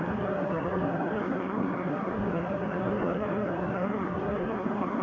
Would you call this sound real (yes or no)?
no